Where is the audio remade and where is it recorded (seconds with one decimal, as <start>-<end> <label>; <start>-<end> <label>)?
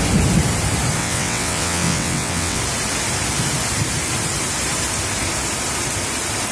0.0-1.0 recorded; 1.0-2.6 remade; 2.6-6.5 recorded